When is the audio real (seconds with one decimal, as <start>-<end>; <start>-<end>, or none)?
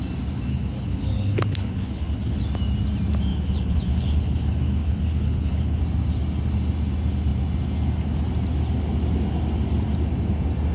0.0-0.5; 2.4-3.3; 5.8-10.7